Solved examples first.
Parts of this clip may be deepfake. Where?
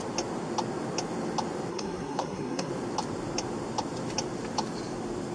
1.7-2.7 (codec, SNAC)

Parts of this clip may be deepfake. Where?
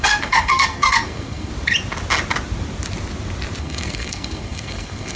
0.0-1.5 (codec, SNAC); 3.6-5.2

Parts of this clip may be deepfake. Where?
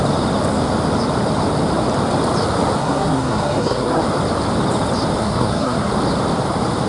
2.8-4.0 (codec, SNAC); 5.2-5.9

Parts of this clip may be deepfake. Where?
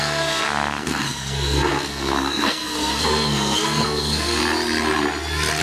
0.0-4.4 (codec, SNAC)